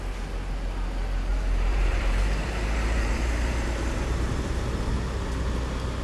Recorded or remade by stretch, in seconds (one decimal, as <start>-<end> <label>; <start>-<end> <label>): 0.0-1.3 recorded; 1.3-4.9 remade; 4.9-6.0 recorded